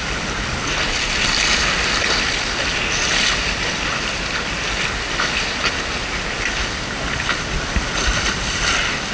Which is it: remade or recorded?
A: recorded